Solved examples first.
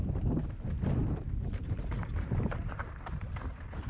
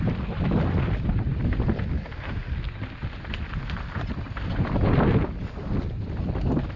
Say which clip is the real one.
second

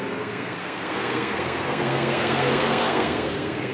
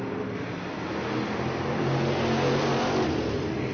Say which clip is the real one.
second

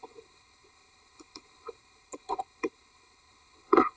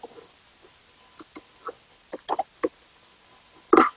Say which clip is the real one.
second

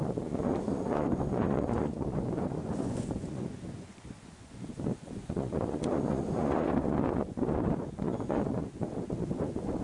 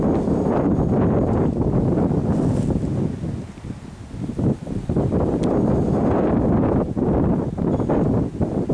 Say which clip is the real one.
second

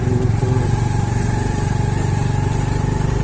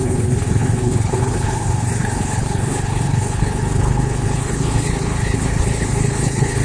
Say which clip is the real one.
first